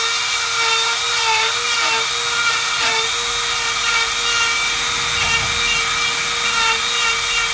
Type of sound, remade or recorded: recorded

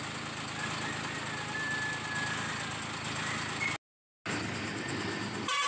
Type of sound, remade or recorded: recorded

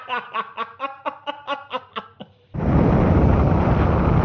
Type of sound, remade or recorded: recorded